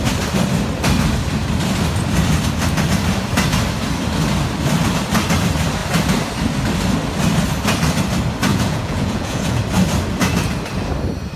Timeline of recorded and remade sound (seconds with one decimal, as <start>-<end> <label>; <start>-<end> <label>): 0.0-8.5 recorded; 8.5-9.6 remade; 9.6-11.4 recorded